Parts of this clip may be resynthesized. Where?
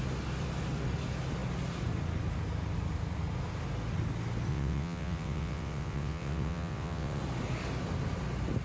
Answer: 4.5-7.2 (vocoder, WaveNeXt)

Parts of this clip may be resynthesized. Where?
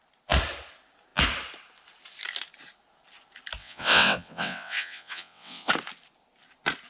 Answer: 3.6-5.7 (vocoder, WaveNeXt)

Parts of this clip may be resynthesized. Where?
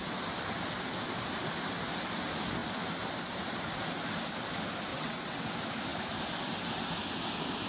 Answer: 4.9-5.5 (vocoder, WaveNeXt)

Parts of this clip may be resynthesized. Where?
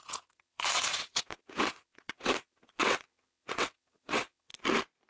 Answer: 0.0-4.5 (vocoder, WaveNeXt)